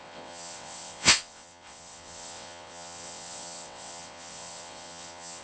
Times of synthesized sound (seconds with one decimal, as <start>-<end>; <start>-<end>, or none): 0.0-5.4